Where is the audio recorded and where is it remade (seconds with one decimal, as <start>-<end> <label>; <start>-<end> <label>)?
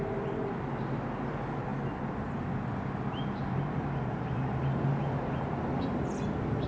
0.0-6.7 recorded